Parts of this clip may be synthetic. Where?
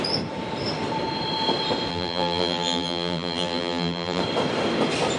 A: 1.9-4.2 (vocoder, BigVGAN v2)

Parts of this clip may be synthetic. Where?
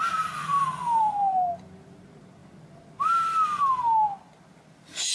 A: none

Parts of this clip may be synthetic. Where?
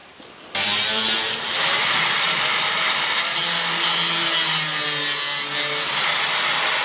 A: 0.0-3.3 (vocoder, BigVGAN v2)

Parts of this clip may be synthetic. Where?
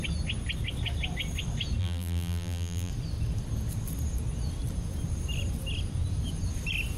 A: 1.8-2.9 (vocoder, BigVGAN v2)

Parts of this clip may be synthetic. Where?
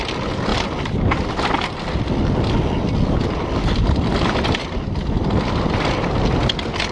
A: none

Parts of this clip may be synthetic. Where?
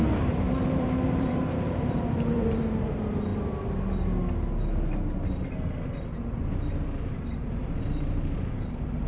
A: 0.0-3.3 (vocoder, BigVGAN v2); 7.1-9.1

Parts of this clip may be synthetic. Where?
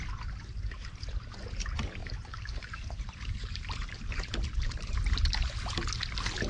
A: 2.0-5.9 (vocoder, BigVGAN v2)